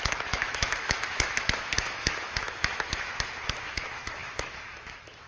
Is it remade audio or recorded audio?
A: remade